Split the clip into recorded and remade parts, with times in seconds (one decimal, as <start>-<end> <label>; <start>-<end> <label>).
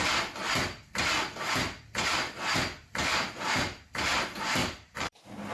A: 0.0-4.6 recorded; 4.6-5.5 remade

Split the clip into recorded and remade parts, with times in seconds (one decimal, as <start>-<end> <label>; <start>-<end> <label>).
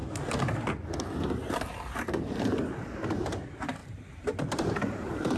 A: 0.0-3.8 recorded; 3.8-5.4 remade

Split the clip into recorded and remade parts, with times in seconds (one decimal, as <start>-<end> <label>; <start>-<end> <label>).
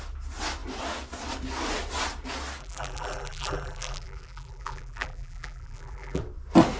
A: 0.0-2.6 recorded; 2.6-6.2 remade; 6.2-6.8 recorded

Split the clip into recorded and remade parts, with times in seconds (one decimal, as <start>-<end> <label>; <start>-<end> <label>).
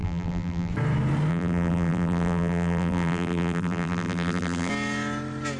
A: 0.0-0.7 remade; 0.7-1.3 recorded; 1.3-4.7 remade; 4.7-5.6 recorded